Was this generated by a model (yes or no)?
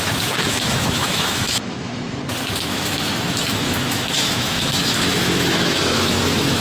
yes